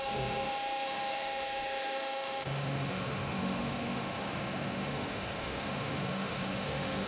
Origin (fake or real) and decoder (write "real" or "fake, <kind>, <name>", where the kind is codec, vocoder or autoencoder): fake, autoencoder, DAC-VAE